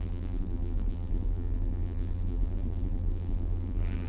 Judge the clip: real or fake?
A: fake